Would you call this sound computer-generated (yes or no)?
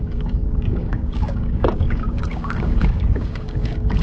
yes